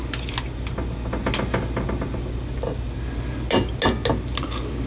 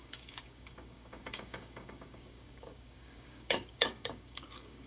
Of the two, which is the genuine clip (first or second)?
first